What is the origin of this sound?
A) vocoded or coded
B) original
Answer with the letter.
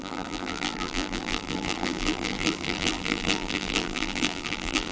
A